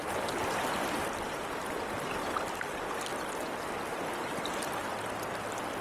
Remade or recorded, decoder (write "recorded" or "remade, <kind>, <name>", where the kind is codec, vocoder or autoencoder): recorded